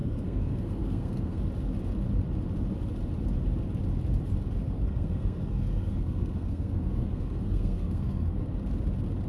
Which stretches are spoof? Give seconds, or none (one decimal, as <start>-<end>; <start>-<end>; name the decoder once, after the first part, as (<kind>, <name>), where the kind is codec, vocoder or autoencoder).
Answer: 0.0-1.4 (codec, SNAC); 4.6-8.4